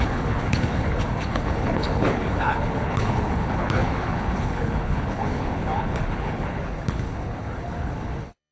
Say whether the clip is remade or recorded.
remade